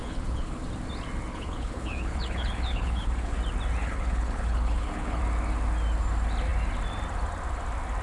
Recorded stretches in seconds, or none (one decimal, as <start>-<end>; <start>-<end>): 0.6-1.3; 3.4-3.8; 5.2-8.0